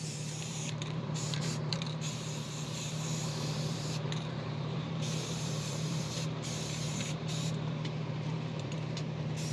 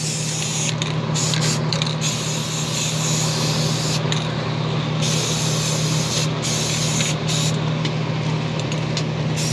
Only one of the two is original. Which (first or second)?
second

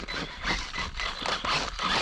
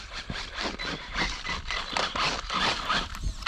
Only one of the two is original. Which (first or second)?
first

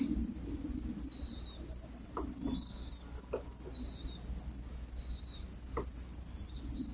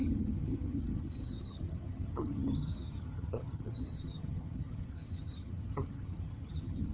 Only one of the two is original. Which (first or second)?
first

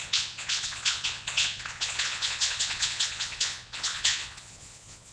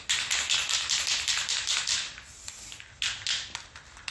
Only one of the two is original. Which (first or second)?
second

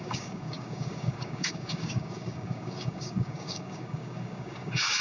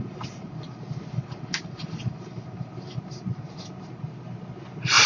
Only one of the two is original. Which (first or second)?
second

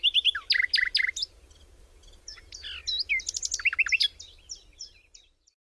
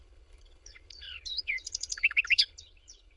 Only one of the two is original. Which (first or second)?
first